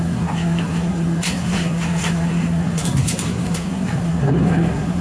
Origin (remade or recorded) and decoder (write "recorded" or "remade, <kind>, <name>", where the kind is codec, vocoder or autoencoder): remade, codec, SNAC